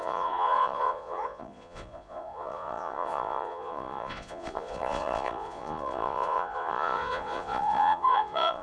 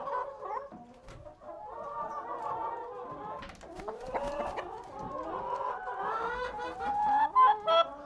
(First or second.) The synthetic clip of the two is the first